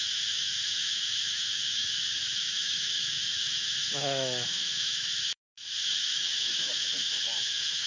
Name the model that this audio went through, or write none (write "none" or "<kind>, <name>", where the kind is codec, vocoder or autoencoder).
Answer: autoencoder, DAC-VAE